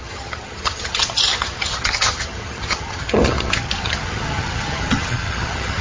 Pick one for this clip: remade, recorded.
remade